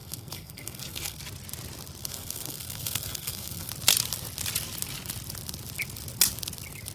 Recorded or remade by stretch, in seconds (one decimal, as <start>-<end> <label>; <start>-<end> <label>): 0.0-1.2 remade; 1.2-2.0 recorded; 2.0-3.7 remade; 3.7-6.9 recorded